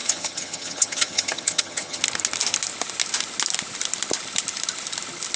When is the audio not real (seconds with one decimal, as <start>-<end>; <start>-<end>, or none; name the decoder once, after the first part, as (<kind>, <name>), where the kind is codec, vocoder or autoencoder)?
0.0-2.0 (vocoder, HiFi-GAN)